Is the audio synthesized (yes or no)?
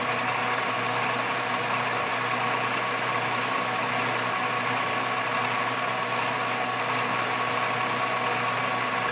no